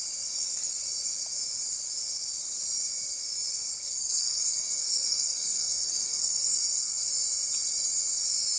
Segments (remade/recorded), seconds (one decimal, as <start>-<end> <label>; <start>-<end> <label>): 0.0-3.7 recorded; 3.7-7.1 remade; 7.1-8.6 recorded